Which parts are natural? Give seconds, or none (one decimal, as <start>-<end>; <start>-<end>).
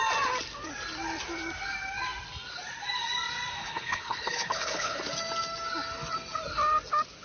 0.0-3.6; 5.0-7.2